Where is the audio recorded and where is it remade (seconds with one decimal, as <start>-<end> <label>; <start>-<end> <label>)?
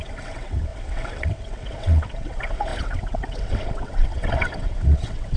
0.0-5.4 remade